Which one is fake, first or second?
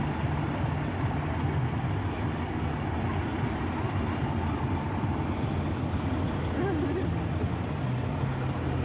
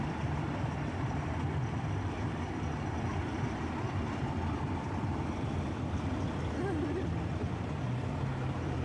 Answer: second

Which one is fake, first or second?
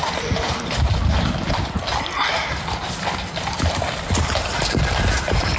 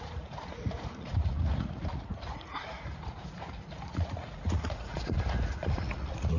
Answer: second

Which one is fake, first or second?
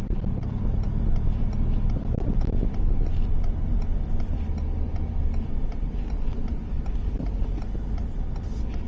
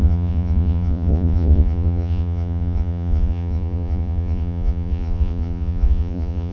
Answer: second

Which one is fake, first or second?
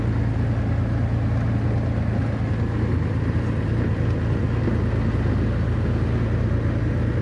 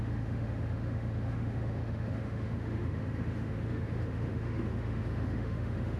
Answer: second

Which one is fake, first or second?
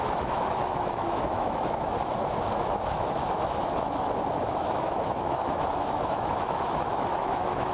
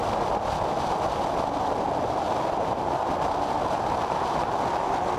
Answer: first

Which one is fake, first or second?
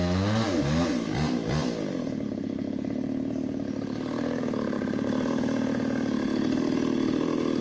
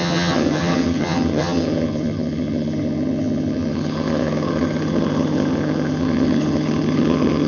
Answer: second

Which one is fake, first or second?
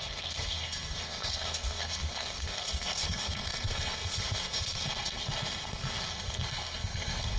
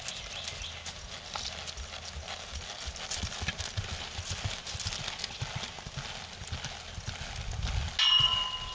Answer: first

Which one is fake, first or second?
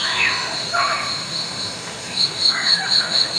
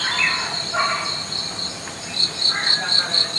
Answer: first